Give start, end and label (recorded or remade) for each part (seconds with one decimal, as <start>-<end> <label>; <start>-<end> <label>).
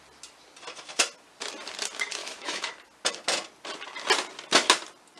0.0-2.2 recorded; 2.2-2.7 remade; 2.7-5.2 recorded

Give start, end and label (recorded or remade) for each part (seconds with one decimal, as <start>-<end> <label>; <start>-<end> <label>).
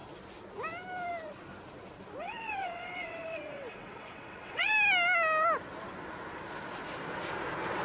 0.0-2.2 recorded; 2.2-4.7 remade; 4.7-7.8 recorded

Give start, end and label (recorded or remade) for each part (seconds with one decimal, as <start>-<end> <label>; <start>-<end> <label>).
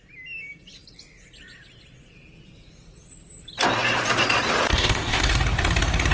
0.0-4.7 recorded; 4.7-5.2 remade; 5.2-6.1 recorded